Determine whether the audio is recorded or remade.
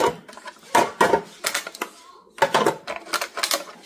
recorded